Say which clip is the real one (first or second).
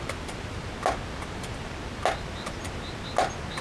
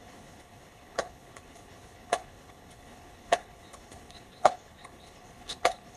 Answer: first